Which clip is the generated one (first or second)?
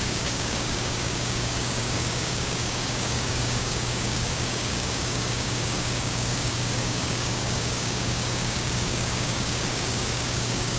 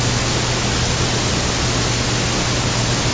first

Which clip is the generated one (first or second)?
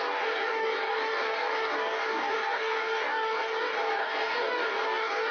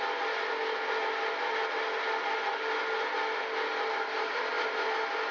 first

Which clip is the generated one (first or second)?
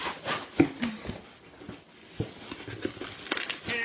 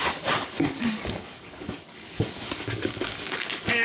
second